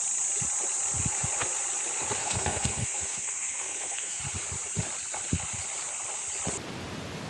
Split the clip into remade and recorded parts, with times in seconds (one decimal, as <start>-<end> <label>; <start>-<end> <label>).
0.0-2.2 recorded; 2.2-4.2 remade; 4.2-7.3 recorded